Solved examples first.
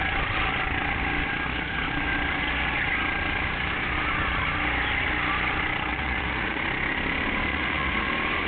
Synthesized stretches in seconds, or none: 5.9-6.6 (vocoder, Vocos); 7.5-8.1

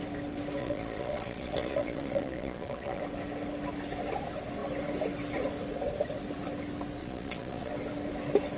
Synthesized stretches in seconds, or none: 0.6-3.0 (vocoder, Vocos); 7.0-7.7

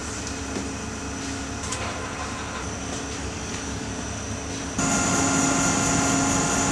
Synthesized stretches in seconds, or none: 3.2-3.9 (codec, DAC)

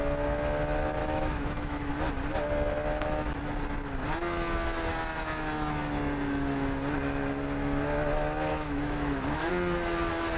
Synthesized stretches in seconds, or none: 1.0-1.9 (autoencoder, DAC-VAE); 8.5-9.5

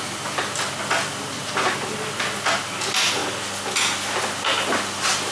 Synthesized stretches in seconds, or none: none

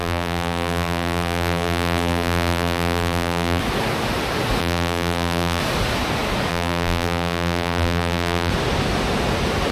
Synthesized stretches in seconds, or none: 0.0-3.6 (vocoder, BigVGAN v2); 4.6-5.6; 6.5-8.5